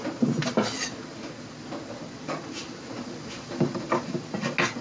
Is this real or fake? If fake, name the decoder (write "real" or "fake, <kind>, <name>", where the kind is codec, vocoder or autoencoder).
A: real